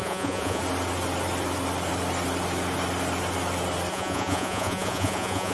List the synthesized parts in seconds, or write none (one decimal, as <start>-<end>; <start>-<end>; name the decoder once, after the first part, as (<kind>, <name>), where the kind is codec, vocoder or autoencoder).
0.0-0.6 (vocoder, Vocos); 3.9-5.5